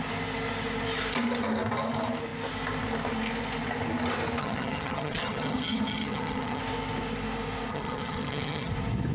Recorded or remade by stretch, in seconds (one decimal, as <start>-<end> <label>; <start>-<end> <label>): 0.0-4.4 recorded; 4.4-6.6 remade; 6.6-7.7 recorded; 7.7-8.7 remade; 8.7-9.1 recorded